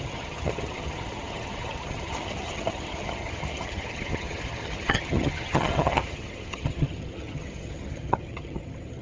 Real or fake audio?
fake